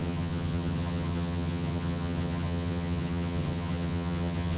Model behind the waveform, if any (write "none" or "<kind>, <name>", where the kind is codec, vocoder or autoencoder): vocoder, HiFi-GAN